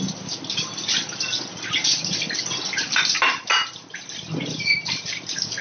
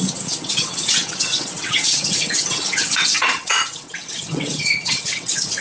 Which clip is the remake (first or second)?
second